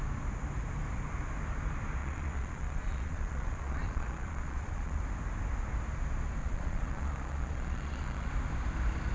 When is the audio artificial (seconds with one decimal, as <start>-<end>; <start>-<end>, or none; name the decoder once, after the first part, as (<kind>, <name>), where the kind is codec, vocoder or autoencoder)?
2.0-5.0 (vocoder, Vocos); 6.4-8.3